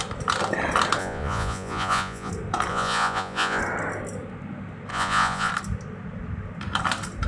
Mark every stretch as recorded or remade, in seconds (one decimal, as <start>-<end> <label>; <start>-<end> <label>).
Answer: 0.0-1.0 recorded; 1.0-2.3 remade; 2.3-2.7 recorded; 2.7-3.6 remade; 3.6-4.9 recorded; 4.9-5.5 remade; 5.5-7.3 recorded